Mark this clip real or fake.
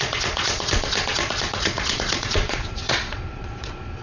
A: fake